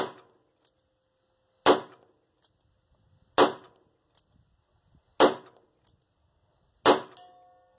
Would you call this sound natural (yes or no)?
yes